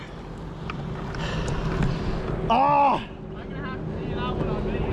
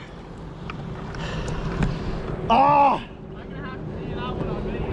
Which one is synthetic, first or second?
second